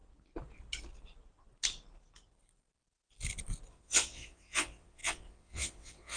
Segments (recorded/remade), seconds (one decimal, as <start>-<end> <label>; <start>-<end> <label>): 0.0-3.7 recorded; 3.7-6.2 remade